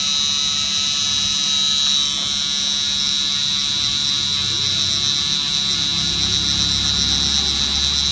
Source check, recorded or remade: recorded